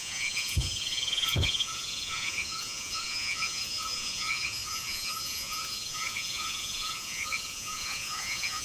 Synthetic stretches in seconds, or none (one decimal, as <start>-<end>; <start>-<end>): 0.0-8.6